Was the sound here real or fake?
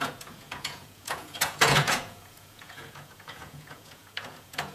fake